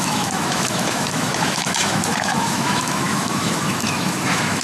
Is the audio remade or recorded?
remade